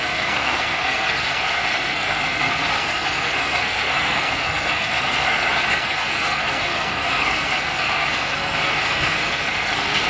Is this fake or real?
fake